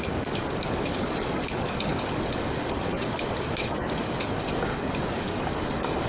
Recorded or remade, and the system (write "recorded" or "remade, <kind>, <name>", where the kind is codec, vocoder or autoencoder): remade, codec, DAC